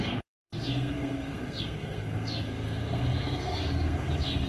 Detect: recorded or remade remade